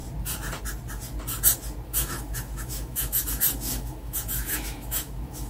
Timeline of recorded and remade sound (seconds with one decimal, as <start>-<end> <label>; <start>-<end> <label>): 0.0-1.9 recorded; 1.9-5.5 remade